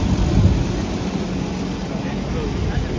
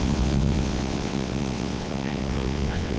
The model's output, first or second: second